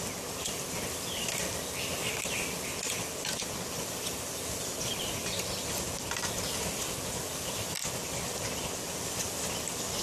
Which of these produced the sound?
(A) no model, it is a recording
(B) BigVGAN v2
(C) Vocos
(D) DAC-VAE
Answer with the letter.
A